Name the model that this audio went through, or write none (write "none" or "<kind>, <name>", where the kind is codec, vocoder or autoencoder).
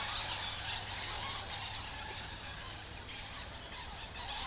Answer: none